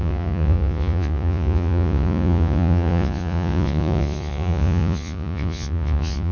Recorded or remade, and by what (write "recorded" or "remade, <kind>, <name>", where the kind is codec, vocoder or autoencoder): remade, vocoder, Vocos